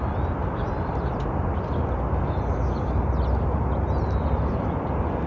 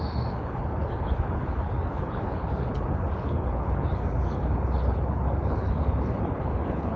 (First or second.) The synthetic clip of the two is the second